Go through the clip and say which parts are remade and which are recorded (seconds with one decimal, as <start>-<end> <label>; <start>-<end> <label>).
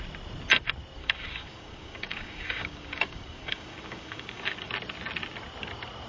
0.0-1.0 recorded; 1.0-4.7 remade; 4.7-6.1 recorded